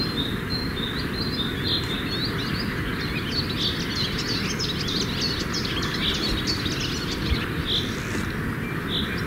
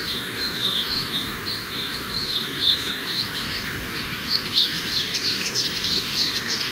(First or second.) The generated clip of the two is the second